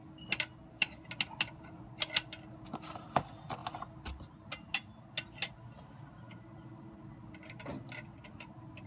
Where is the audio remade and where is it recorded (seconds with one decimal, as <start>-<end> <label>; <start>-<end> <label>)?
0.0-8.9 recorded